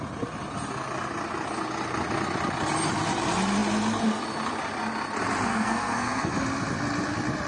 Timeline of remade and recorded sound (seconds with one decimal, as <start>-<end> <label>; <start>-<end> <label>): 0.0-5.5 recorded; 5.5-6.3 remade; 6.3-7.5 recorded